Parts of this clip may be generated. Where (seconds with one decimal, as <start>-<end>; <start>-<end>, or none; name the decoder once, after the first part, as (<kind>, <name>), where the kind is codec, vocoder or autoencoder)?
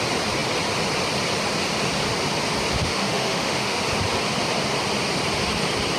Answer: 2.8-3.8 (autoencoder, DAC-VAE)